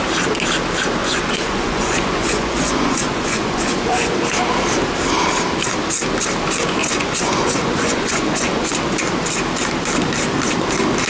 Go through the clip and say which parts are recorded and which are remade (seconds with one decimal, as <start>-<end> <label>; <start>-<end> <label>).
0.0-1.0 recorded; 1.0-4.2 remade; 4.2-6.8 recorded; 6.8-8.8 remade; 8.8-11.1 recorded